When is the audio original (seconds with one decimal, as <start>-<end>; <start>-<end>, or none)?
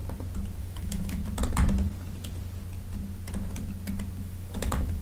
0.0-0.6; 1.2-4.2